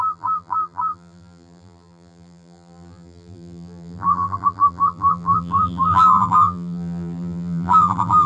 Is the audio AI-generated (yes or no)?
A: yes